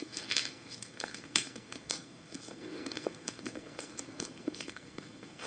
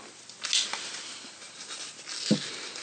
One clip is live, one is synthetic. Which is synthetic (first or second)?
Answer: first